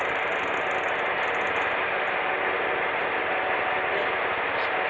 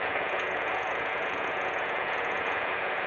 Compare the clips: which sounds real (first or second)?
first